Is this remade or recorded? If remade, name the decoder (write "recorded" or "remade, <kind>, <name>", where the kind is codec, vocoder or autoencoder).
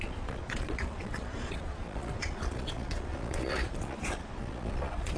remade, vocoder, Vocos